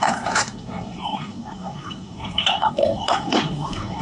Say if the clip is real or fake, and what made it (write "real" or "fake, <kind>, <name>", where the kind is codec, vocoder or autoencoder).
fake, codec, SNAC